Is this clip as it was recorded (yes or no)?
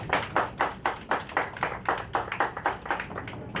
yes